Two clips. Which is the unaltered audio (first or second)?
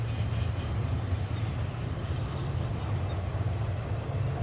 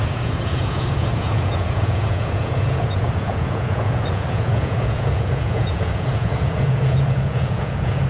first